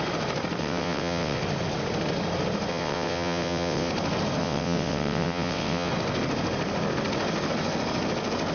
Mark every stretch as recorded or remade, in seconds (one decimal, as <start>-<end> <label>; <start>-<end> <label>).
0.0-0.6 recorded; 0.6-1.4 remade; 1.4-2.7 recorded; 2.7-3.9 remade; 3.9-4.4 recorded; 4.4-5.9 remade; 5.9-8.5 recorded